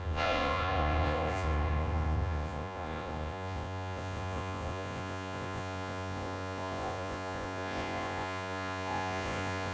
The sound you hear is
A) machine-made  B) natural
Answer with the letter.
A